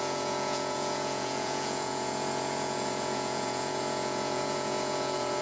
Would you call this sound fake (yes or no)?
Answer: yes